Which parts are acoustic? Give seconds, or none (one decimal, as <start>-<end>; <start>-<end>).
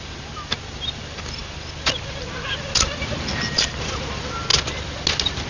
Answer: 0.0-5.5